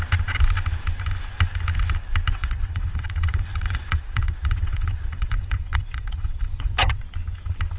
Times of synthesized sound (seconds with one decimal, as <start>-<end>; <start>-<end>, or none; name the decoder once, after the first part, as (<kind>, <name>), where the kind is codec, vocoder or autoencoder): 2.3-7.0 (vocoder, WaveNeXt)